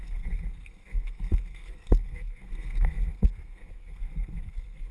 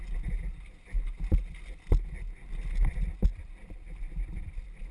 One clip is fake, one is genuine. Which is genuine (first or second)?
second